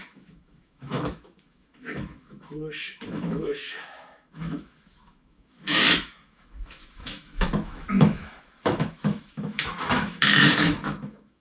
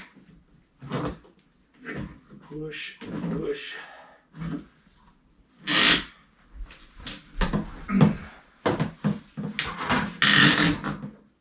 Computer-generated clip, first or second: first